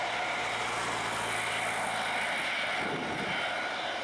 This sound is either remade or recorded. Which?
recorded